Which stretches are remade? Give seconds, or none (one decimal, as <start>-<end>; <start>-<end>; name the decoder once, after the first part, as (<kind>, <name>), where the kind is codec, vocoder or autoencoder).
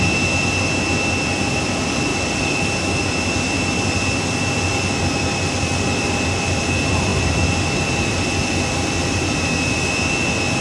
none